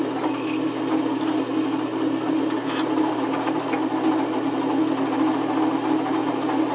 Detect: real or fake real